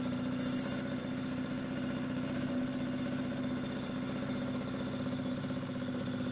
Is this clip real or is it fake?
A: real